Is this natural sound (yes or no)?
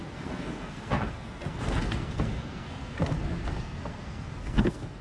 no